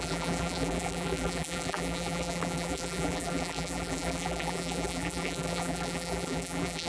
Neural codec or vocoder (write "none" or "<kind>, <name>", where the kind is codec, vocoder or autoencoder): vocoder, BigVGAN v2